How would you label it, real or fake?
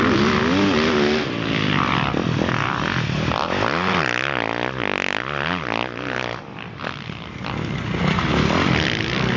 real